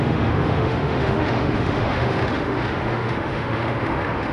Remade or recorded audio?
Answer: remade